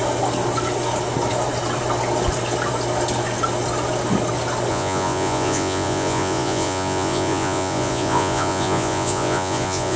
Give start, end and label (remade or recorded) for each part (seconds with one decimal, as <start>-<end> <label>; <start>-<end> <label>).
0.0-4.7 recorded; 4.7-10.0 remade